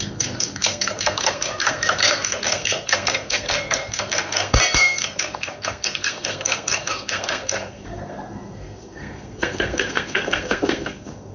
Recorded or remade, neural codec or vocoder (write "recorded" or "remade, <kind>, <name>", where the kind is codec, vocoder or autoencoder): remade, codec, SNAC